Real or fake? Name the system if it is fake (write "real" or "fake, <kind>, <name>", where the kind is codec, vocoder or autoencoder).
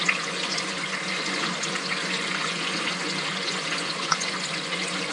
fake, vocoder, Vocos